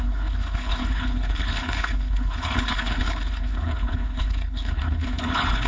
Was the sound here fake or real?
fake